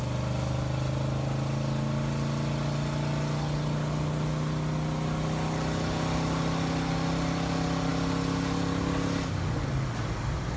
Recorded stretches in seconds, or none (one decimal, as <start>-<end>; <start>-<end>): 0.0-10.6